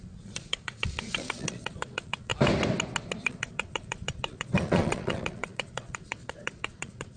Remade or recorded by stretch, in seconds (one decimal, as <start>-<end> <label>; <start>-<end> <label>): 0.0-2.3 remade; 2.3-3.2 recorded; 3.2-7.2 remade